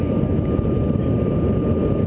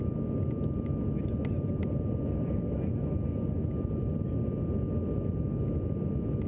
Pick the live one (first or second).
second